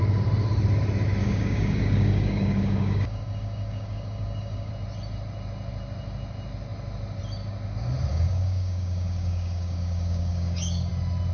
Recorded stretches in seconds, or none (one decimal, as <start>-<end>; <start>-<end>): 0.0-1.2; 4.7-8.1; 10.9-11.3